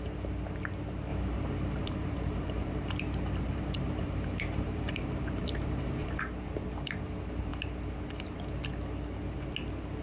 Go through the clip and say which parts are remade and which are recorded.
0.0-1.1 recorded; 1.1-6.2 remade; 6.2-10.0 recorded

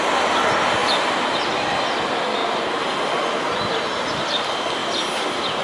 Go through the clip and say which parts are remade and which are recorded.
0.0-5.6 recorded

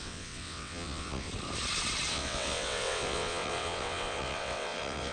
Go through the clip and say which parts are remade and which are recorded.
0.0-1.3 remade; 1.3-2.1 recorded; 2.1-5.1 remade